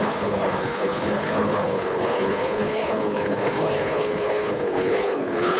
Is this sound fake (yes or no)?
yes